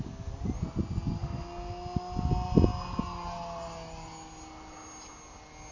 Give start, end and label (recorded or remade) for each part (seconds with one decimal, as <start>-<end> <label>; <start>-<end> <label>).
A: 0.0-5.7 recorded